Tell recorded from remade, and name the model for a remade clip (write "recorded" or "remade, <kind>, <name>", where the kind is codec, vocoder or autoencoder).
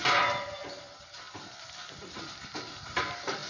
recorded